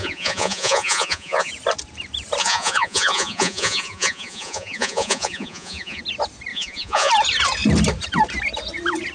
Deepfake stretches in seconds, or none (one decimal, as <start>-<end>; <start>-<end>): 0.0-1.5; 2.4-6.0; 6.5-7.1